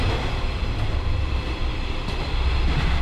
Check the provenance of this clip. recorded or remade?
recorded